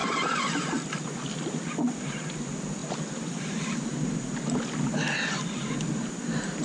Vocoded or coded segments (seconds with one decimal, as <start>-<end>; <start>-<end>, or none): 0.0-2.1